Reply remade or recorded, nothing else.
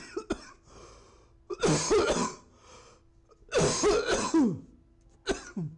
recorded